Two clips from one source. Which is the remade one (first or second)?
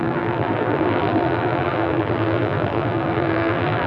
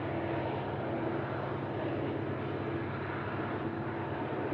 first